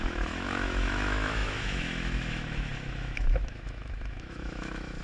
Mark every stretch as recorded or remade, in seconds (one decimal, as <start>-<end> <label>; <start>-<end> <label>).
0.0-5.0 remade